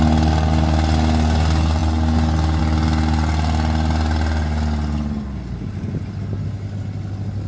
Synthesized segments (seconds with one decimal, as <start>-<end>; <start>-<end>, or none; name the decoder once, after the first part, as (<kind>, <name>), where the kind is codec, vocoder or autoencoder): none